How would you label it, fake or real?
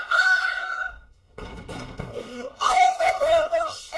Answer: fake